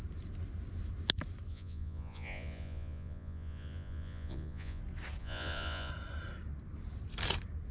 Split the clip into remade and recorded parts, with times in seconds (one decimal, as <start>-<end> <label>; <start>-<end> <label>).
0.0-1.5 recorded; 1.5-4.8 remade; 4.8-5.2 recorded; 5.2-5.9 remade; 5.9-7.7 recorded